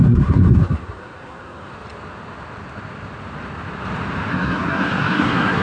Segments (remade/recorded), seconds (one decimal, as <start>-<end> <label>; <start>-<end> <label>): 0.0-1.7 remade; 1.7-4.3 recorded; 4.3-5.6 remade